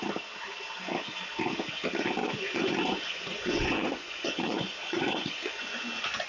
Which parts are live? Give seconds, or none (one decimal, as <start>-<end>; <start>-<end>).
0.0-2.2